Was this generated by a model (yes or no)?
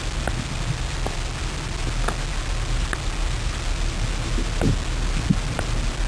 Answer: no